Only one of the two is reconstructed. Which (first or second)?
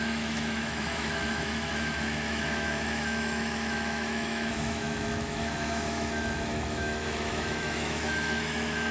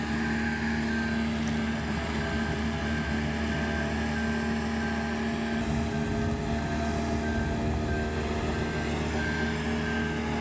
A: first